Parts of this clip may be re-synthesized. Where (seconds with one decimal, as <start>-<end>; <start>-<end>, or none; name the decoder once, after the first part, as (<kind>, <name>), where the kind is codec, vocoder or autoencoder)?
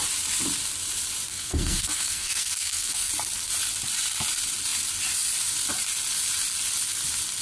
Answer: 1.3-3.1 (codec, SNAC)